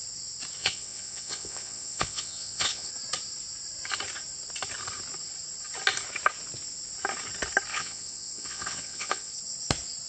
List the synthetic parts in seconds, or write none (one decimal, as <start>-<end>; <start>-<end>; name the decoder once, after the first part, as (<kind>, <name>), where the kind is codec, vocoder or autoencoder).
0.6-2.9 (vocoder, WaveNeXt); 7.7-9.3